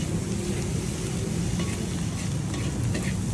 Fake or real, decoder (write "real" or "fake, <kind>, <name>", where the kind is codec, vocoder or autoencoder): real